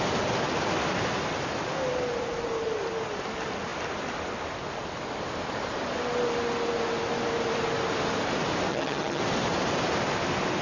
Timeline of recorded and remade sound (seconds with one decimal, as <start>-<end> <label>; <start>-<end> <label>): 0.0-8.7 recorded; 8.7-9.2 remade; 9.2-10.6 recorded